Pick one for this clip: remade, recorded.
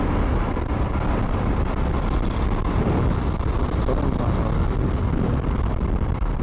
recorded